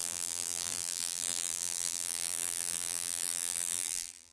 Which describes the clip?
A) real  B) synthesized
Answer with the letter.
B